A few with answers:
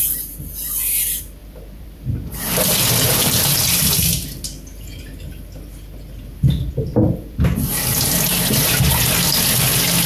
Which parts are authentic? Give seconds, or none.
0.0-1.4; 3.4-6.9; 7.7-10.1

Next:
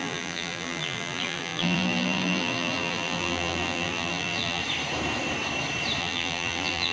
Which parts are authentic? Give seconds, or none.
4.6-6.0

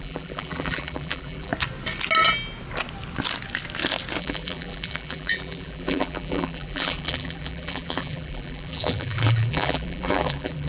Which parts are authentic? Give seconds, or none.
1.5-4.2

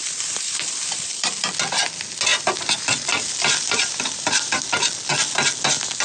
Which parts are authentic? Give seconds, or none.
1.5-2.3; 4.6-6.0